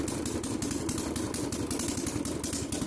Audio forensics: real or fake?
real